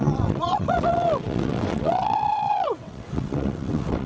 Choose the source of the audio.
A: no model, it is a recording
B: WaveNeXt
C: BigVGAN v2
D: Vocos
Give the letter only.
B